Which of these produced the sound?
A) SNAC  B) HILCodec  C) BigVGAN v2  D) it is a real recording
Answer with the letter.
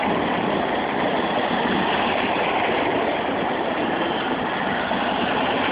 D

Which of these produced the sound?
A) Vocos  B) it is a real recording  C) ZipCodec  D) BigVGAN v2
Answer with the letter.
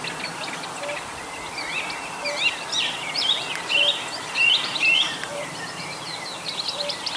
D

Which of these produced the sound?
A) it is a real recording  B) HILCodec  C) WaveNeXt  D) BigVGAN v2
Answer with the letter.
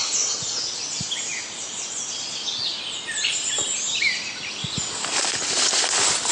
A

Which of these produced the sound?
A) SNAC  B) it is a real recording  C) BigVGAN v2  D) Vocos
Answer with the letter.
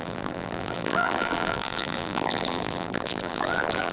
C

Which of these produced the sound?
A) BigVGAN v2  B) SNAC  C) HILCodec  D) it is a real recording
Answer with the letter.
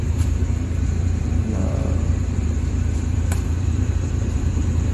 A